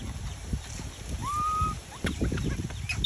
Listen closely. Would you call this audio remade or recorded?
recorded